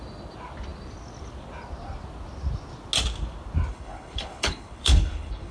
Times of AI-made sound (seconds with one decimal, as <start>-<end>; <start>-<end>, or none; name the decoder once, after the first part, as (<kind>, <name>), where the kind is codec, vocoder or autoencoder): 3.7-5.5 (codec, HILCodec)